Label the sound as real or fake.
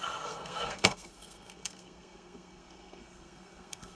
fake